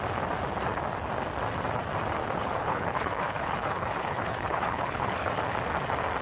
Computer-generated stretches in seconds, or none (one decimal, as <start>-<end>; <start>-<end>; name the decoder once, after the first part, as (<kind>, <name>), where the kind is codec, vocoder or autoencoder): 2.2-5.3 (codec, HILCodec)